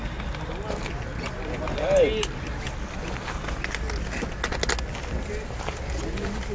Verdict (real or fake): real